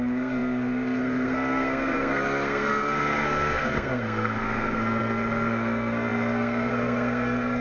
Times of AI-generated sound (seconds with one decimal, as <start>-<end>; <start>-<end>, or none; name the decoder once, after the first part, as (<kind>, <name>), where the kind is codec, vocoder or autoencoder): 0.0-7.6 (codec, SNAC)